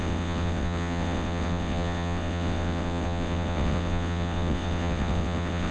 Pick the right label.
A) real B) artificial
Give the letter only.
B